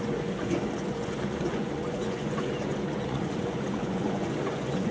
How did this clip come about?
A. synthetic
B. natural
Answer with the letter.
A